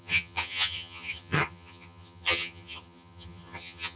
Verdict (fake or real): fake